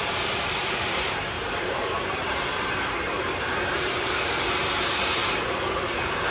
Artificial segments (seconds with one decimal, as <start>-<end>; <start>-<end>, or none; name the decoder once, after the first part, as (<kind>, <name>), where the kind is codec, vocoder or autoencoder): 0.0-5.2 (vocoder, BigVGAN v2)